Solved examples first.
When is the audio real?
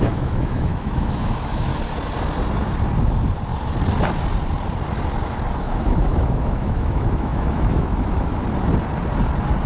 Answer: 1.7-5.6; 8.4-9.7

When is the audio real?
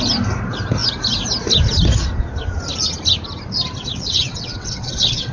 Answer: 0.0-3.8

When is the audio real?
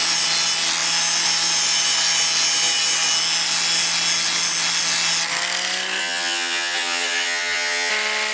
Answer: 0.0-6.0; 7.9-8.3